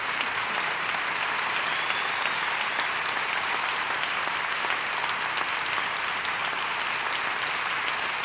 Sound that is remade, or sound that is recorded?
recorded